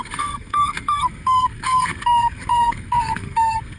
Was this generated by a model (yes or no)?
yes